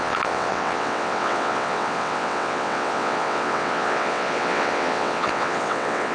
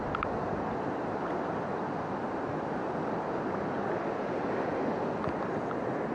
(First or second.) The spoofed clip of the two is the first